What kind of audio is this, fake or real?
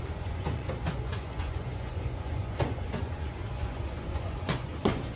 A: fake